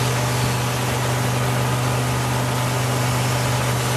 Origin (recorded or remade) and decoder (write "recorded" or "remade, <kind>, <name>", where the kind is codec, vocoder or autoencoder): recorded